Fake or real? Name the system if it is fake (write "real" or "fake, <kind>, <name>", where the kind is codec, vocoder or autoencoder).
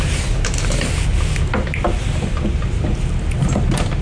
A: real